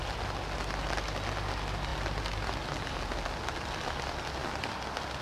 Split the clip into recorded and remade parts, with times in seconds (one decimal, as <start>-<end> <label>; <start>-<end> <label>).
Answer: 0.0-5.2 recorded